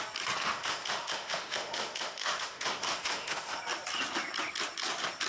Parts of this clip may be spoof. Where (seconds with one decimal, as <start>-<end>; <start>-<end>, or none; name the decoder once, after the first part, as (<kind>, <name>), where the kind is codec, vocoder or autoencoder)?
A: 0.4-3.6 (autoencoder, DAC-VAE)

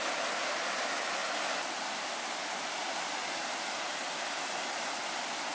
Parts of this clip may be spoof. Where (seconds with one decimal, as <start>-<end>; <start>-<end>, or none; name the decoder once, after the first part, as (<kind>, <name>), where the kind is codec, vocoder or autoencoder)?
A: none